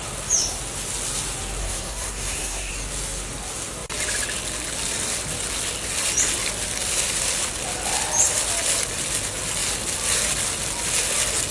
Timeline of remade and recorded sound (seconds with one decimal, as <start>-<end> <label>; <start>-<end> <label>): 0.0-1.6 recorded; 1.6-2.7 remade; 2.7-11.5 recorded

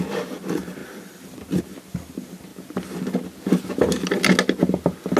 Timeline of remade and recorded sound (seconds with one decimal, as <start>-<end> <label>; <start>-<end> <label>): 0.0-5.2 recorded